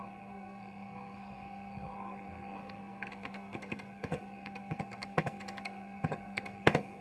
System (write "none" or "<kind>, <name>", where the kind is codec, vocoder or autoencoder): codec, SNAC